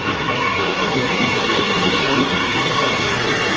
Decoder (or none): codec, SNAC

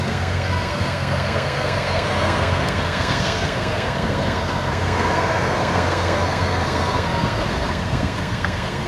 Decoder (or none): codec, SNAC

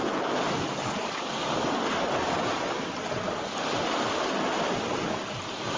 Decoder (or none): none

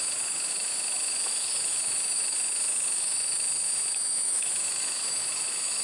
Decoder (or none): autoencoder, DAC-VAE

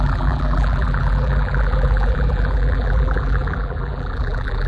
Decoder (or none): vocoder, BigVGAN v2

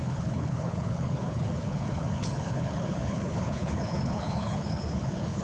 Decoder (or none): codec, HILCodec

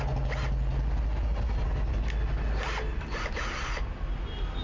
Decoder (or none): none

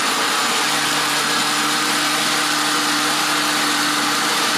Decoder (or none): none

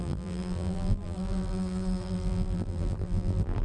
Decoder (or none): vocoder, BigVGAN v2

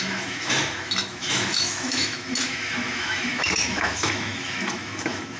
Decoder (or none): autoencoder, DAC-VAE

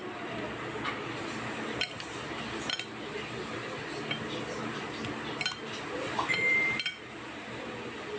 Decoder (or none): vocoder, BigVGAN v2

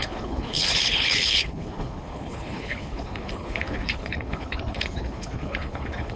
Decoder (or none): codec, HILCodec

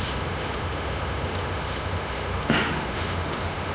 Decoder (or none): autoencoder, DAC-VAE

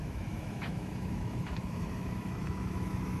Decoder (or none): autoencoder, DAC-VAE